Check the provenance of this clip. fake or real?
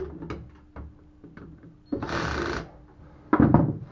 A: real